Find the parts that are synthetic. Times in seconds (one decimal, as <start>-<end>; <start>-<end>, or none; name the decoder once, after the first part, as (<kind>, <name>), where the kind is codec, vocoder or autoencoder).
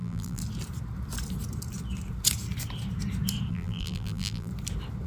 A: 0.0-0.4 (vocoder, BigVGAN v2); 3.5-4.5